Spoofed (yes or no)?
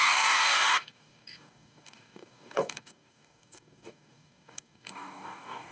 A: yes